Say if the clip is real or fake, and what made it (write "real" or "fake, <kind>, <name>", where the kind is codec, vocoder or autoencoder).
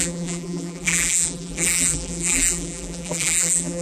fake, vocoder, BigVGAN v2